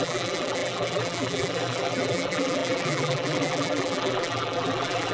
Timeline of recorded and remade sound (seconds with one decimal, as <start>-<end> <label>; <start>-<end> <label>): 0.0-5.1 remade